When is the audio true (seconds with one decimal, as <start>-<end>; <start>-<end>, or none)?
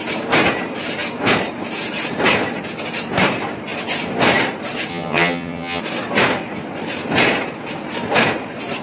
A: 0.0-4.9; 5.8-8.8